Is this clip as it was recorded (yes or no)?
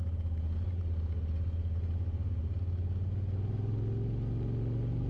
yes